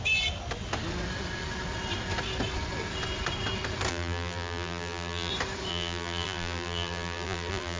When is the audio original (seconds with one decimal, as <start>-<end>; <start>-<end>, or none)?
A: 0.0-3.9; 5.3-5.7